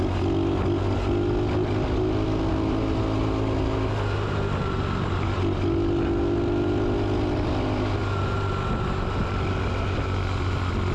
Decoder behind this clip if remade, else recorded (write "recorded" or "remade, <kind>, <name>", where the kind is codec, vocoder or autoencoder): recorded